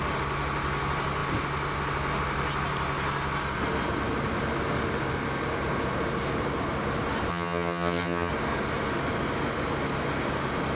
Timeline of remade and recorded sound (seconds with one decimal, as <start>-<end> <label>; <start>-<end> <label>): 0.0-7.3 recorded; 7.3-8.3 remade; 8.3-10.7 recorded